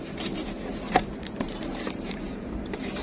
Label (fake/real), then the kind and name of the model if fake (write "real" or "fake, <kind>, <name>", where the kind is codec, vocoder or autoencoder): fake, vocoder, BigVGAN v2